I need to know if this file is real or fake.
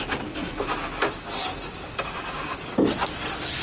real